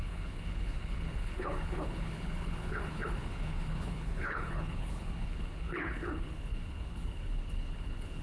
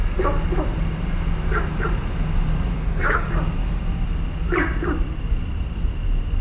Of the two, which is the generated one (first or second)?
first